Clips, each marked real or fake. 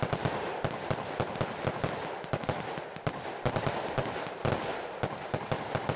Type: real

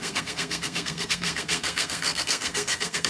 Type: fake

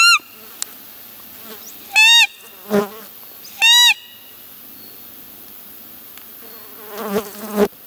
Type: real